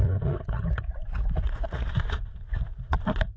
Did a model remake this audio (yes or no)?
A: yes